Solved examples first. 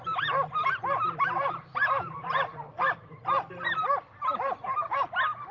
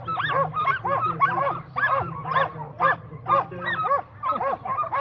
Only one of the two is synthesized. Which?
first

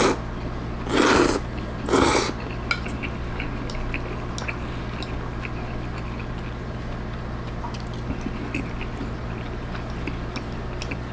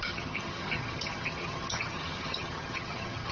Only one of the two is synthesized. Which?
second